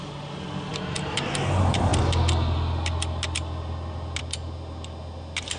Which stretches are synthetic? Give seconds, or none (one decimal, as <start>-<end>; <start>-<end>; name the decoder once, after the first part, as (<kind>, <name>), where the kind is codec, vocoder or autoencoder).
0.7-1.3 (vocoder, BigVGAN v2)